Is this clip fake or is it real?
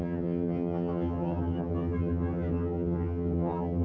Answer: fake